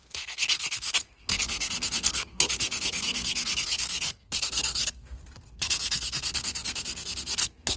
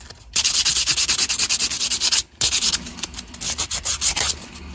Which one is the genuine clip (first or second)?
second